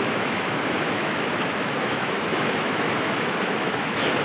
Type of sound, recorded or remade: remade